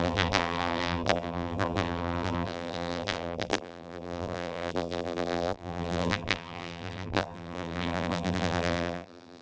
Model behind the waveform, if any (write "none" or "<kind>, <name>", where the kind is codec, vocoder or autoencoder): vocoder, BigVGAN v2